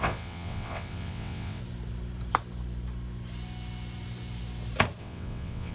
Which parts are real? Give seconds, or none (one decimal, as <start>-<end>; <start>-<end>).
1.6-5.0